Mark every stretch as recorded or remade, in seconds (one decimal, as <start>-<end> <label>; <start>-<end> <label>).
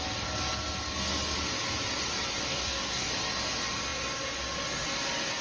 0.0-2.5 recorded; 2.5-3.1 remade; 3.1-5.4 recorded